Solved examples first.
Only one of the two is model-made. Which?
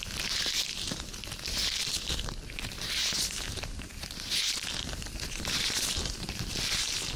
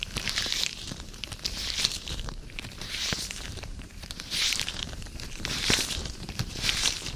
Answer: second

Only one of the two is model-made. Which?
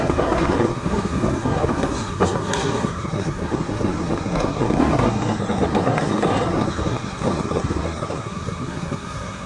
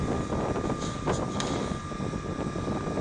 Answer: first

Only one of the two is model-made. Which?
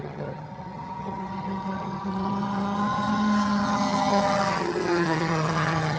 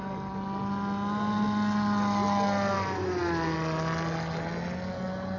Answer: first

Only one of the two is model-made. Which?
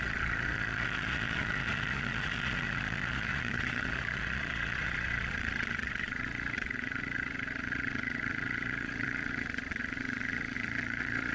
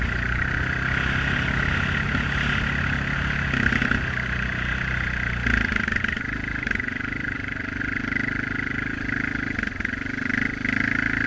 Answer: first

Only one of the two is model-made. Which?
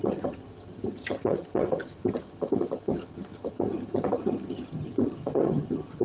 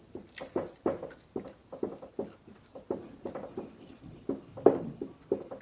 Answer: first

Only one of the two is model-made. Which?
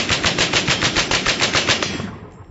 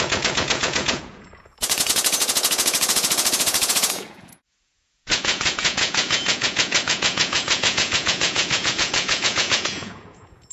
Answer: second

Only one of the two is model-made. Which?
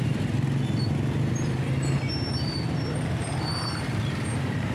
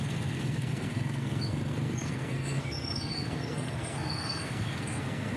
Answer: second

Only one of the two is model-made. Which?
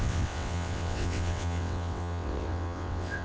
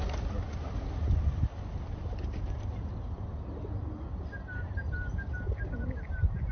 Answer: first